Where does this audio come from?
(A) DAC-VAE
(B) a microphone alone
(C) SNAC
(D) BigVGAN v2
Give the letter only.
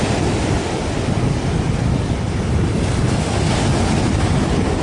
B